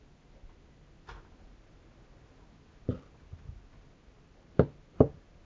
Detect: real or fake real